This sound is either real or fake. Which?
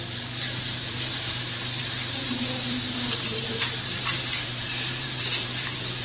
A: fake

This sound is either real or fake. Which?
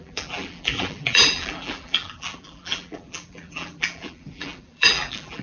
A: fake